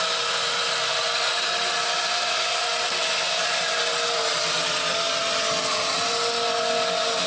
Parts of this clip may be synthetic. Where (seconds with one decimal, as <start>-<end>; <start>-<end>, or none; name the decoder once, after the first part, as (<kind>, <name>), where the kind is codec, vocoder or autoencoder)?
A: none